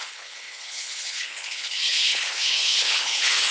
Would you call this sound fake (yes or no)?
yes